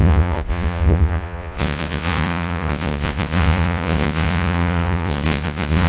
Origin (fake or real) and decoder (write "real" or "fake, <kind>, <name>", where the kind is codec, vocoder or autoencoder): fake, vocoder, Vocos